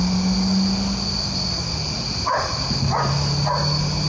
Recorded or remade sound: recorded